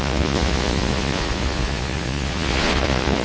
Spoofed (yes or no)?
yes